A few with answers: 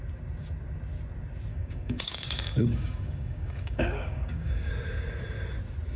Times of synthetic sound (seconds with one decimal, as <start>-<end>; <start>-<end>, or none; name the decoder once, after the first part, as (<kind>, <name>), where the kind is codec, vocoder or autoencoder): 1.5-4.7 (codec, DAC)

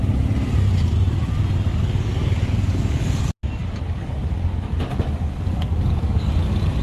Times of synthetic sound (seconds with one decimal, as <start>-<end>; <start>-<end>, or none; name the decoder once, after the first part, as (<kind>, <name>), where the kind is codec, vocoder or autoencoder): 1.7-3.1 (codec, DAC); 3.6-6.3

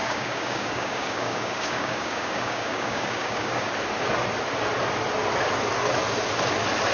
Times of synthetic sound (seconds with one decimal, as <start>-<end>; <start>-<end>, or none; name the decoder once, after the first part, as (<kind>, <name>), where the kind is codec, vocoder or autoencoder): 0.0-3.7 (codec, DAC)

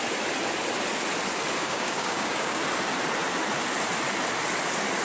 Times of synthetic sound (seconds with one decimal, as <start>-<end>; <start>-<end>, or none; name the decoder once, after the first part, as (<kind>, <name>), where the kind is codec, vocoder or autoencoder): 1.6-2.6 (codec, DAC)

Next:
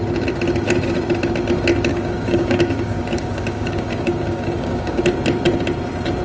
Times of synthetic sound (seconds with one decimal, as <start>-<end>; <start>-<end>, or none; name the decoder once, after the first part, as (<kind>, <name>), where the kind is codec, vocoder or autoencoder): 1.9-5.0 (codec, DAC)

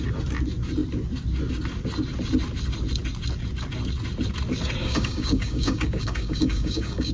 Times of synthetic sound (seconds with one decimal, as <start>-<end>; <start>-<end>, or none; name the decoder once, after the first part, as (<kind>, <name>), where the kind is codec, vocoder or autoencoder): 4.8-7.1 (codec, DAC)

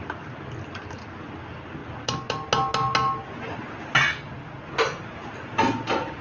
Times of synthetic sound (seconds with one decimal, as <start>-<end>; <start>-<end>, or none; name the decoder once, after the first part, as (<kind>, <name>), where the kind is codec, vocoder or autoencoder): none